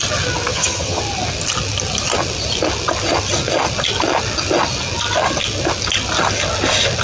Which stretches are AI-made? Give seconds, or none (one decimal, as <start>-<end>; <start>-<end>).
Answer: 0.5-1.0